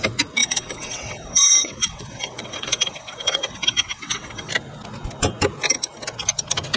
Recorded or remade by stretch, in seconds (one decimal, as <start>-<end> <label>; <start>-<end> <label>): 0.0-0.4 recorded; 0.4-4.5 remade; 4.5-6.8 recorded